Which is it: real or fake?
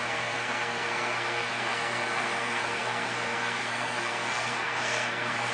fake